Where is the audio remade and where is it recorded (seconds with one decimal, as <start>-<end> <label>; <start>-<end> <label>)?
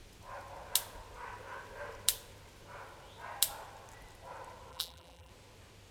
0.0-4.7 recorded; 4.7-5.3 remade; 5.3-5.9 recorded